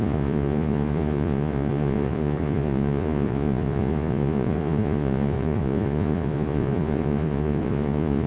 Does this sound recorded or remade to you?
remade